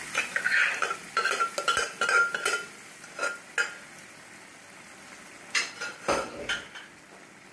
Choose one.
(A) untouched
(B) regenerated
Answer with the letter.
A